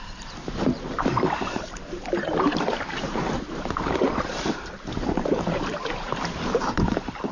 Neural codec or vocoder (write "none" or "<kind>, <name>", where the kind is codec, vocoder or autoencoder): vocoder, BigVGAN v2